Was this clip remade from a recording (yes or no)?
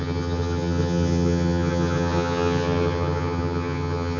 yes